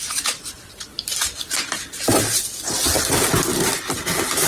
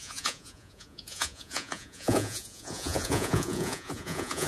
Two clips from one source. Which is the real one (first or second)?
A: first